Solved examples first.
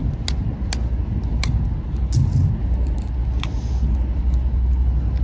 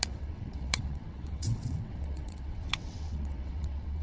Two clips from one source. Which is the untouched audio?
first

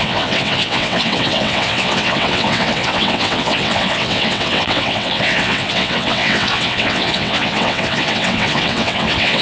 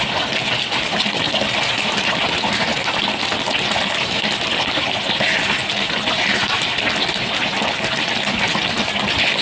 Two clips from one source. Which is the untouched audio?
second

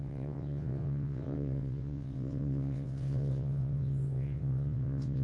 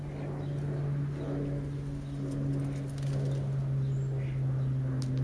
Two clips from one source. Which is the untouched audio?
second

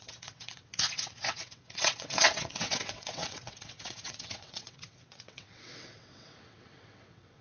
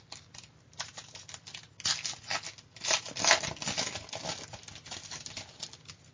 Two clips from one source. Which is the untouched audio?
second